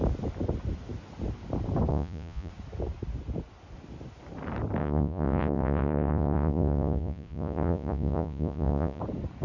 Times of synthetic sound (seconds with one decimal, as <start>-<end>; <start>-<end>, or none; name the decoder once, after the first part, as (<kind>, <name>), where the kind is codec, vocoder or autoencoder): 1.9-2.5 (vocoder, Vocos); 4.8-9.0